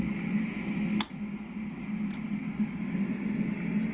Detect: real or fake real